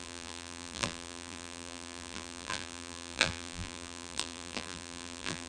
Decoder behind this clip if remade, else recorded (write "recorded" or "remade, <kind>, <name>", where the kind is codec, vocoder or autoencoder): remade, vocoder, BigVGAN v2